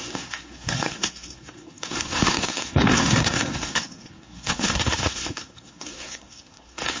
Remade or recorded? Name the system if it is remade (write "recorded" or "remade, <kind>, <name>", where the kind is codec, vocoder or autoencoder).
remade, codec, SNAC